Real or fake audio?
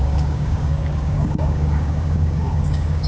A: fake